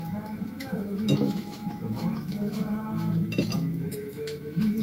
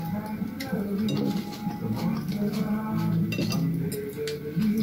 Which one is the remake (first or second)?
first